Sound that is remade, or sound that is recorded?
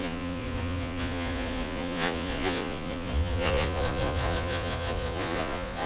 remade